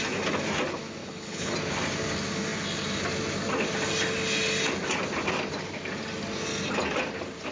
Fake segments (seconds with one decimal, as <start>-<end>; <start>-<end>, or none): 1.0-1.5